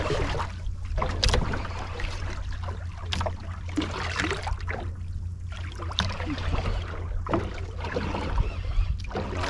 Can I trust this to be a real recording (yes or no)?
yes